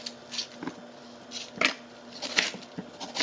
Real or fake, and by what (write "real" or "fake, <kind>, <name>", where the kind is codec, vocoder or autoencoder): real